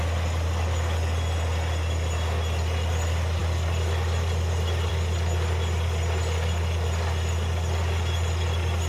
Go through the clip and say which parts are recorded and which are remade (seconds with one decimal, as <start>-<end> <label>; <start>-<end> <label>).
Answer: 0.0-8.9 recorded